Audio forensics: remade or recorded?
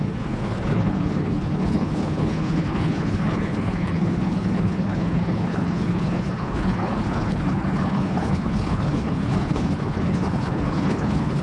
remade